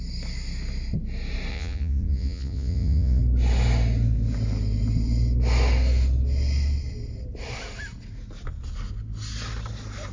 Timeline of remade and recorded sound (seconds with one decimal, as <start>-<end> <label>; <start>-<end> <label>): 0.0-1.5 recorded; 1.5-3.2 remade; 3.2-10.1 recorded